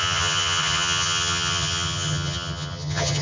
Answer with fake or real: fake